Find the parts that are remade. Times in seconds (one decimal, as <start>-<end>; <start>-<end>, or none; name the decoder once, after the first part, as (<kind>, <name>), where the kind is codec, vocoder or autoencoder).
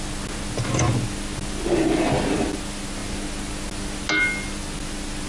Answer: none